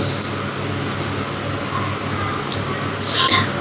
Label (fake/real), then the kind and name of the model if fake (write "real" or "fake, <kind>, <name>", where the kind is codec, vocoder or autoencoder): real